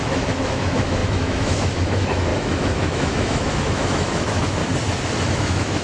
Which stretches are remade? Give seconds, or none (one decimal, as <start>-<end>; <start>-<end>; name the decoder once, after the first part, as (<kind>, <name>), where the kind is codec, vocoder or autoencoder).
0.0-4.6 (autoencoder, DAC-VAE); 5.3-5.8